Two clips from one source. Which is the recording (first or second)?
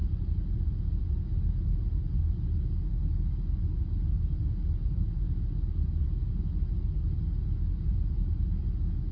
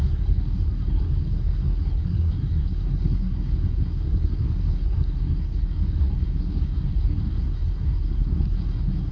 first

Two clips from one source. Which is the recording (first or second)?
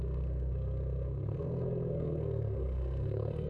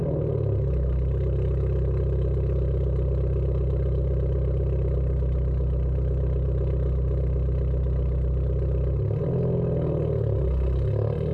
second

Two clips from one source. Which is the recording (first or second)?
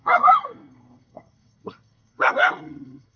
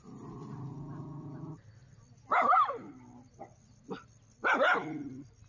second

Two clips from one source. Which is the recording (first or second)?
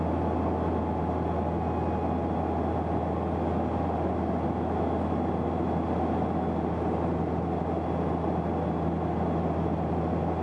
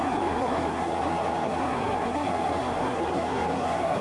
first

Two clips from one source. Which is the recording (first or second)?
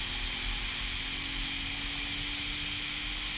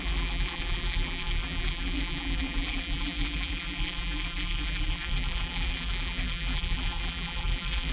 first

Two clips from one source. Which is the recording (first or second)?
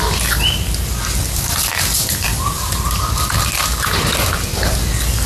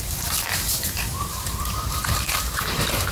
first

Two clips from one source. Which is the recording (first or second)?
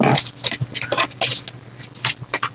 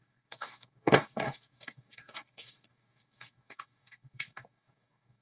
first